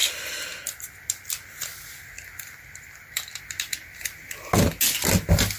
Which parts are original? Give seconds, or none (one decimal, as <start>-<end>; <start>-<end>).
0.0-5.6